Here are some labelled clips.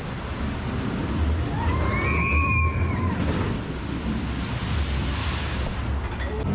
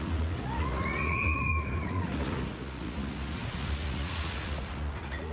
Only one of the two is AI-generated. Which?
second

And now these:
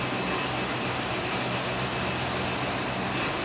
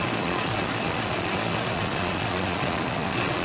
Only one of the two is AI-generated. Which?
second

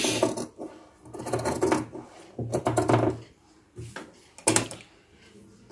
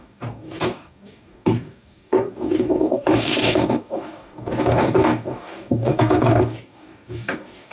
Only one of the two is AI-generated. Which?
second